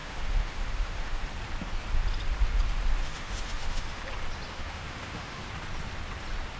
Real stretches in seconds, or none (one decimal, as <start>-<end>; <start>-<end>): 1.3-3.0; 4.0-4.5; 5.5-6.6